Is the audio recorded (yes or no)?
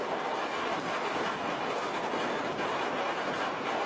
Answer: yes